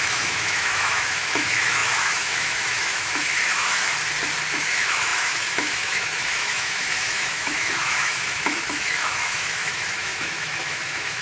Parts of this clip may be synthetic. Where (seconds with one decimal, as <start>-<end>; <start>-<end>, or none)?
0.0-3.9; 4.5-11.2